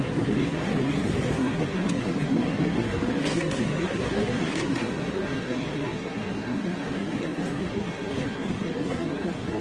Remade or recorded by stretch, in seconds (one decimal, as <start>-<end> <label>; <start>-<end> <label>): 0.0-9.6 remade